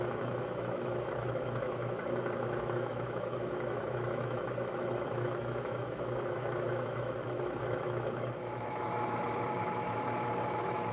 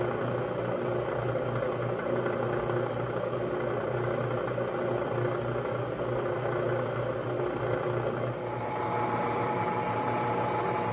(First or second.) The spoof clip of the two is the first